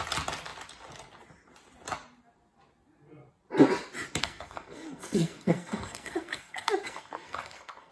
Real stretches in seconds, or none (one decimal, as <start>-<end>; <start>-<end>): 0.0-4.2